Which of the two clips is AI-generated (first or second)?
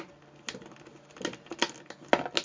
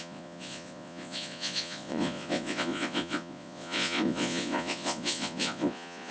second